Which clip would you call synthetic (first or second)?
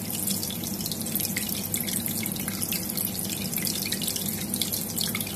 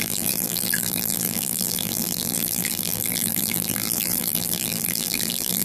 second